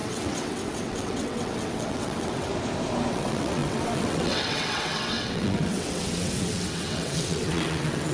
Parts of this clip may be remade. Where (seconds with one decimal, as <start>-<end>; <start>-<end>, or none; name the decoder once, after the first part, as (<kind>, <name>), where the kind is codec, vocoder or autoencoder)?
0.0-2.5 (vocoder, WaveNeXt); 3.1-8.1